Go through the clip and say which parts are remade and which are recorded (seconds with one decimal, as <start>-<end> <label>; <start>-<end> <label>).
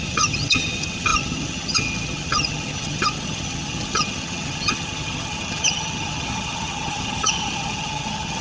0.0-8.4 remade